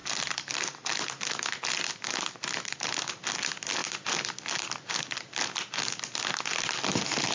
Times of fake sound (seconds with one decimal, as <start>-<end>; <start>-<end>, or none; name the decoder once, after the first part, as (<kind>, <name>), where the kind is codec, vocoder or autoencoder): none